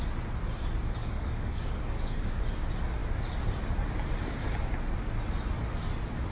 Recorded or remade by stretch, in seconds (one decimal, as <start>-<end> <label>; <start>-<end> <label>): 0.0-1.0 recorded; 1.0-2.4 remade; 2.4-6.3 recorded